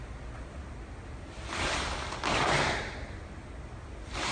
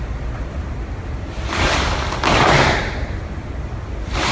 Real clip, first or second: first